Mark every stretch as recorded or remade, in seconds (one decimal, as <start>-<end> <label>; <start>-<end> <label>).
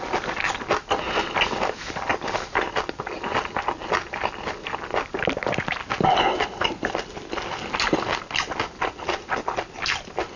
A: 0.0-10.4 recorded